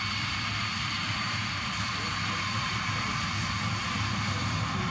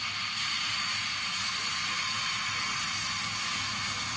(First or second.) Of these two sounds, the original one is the second